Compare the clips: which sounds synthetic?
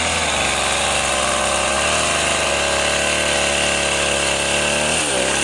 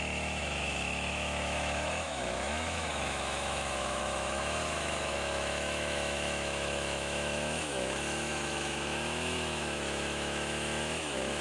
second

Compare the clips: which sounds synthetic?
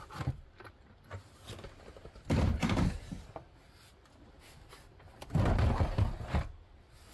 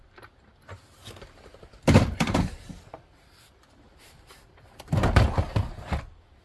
second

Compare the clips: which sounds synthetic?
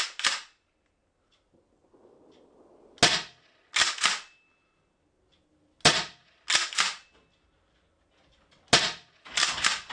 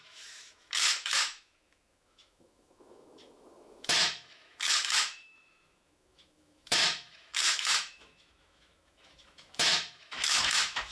second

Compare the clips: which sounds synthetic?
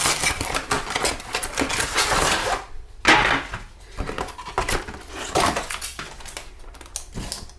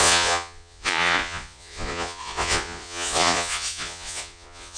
second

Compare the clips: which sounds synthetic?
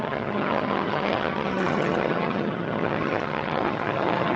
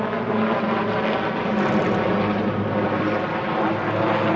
first